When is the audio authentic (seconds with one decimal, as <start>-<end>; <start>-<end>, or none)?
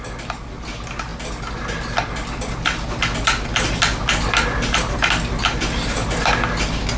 0.0-7.0